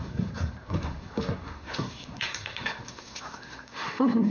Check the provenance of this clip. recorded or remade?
remade